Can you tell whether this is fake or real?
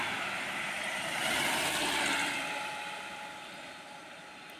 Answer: fake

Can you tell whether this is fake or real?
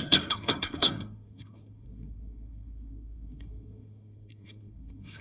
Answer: fake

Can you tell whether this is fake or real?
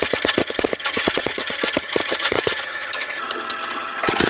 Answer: fake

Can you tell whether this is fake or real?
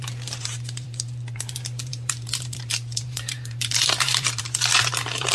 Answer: fake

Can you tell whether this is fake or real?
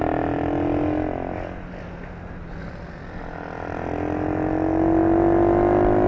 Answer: real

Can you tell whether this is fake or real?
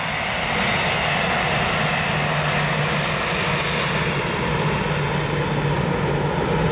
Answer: real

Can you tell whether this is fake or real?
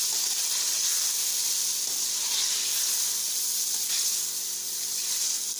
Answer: real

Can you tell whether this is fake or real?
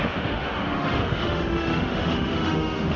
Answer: fake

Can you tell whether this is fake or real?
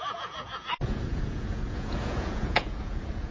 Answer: fake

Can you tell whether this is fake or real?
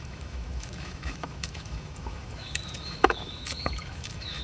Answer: fake